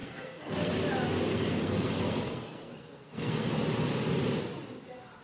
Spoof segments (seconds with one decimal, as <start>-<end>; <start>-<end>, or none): 0.0-0.7; 1.3-3.5